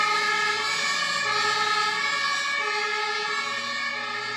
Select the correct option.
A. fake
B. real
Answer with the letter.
B